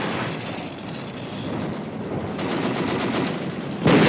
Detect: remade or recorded recorded